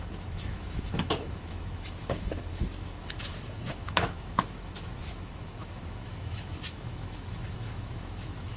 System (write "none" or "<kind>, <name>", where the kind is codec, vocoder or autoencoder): autoencoder, DAC-VAE